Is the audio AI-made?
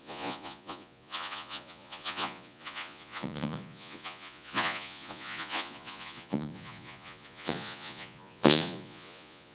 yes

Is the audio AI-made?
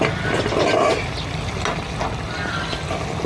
no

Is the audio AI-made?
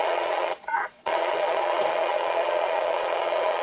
yes